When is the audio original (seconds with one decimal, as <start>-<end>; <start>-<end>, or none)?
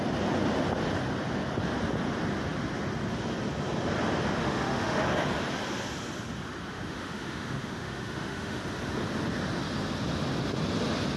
0.0-4.4; 5.0-6.7; 8.6-11.2